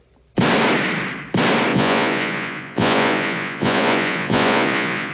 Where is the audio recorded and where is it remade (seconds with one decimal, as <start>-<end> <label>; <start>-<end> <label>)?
0.0-1.7 recorded; 1.7-5.1 remade